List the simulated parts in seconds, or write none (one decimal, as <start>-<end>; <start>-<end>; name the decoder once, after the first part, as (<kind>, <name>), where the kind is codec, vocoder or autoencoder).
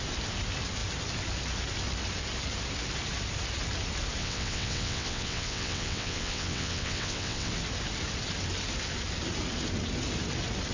4.2-7.5 (vocoder, WaveNeXt)